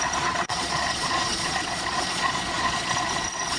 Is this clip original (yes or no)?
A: no